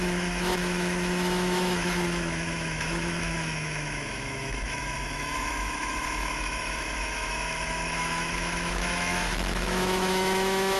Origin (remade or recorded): remade